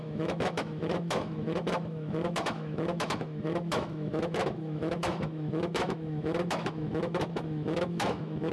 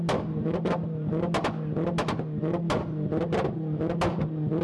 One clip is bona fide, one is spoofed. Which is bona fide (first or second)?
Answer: second